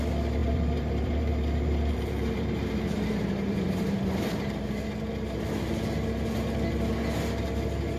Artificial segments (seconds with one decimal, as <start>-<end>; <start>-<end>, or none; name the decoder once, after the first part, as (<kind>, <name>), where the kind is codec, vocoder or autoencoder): 0.4-4.9 (vocoder, BigVGAN v2)